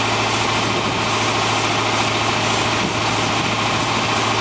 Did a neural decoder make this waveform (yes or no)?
no